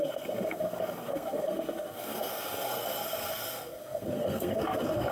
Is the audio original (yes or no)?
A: no